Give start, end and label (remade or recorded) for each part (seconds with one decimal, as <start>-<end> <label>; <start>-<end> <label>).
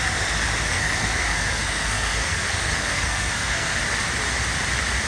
0.0-0.7 recorded; 0.7-3.8 remade; 3.8-5.1 recorded